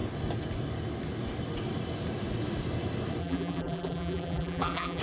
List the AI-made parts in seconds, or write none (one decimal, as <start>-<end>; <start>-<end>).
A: 3.2-5.0